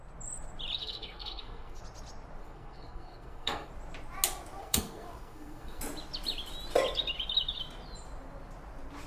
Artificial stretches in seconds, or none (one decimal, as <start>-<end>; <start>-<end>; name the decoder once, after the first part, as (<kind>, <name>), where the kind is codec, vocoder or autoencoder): 0.8-1.8 (codec, SNAC); 2.4-3.7; 4.6-5.8